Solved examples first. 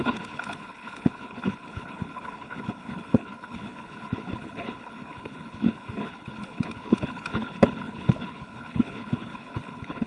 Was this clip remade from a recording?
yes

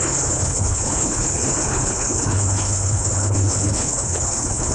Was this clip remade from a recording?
yes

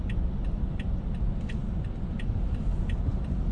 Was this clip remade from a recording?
no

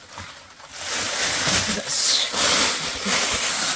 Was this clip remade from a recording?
no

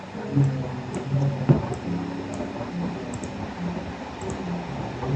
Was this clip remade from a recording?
no